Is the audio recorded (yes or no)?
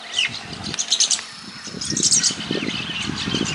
yes